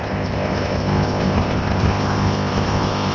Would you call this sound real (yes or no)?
no